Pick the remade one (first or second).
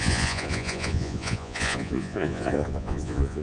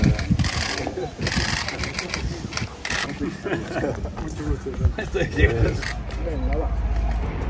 first